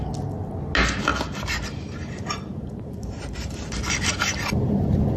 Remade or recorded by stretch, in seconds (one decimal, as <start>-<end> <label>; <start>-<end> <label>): 0.0-1.1 recorded; 1.1-3.7 remade; 3.7-5.2 recorded